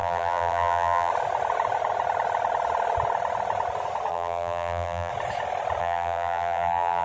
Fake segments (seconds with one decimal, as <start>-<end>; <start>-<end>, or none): 0.0-1.1; 4.1-5.1; 5.8-7.0